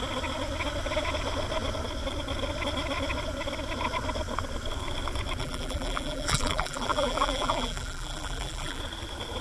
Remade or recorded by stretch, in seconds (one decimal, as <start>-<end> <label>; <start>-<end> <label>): 0.0-5.4 recorded; 5.4-8.8 remade; 8.8-9.4 recorded